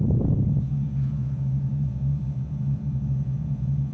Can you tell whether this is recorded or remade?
remade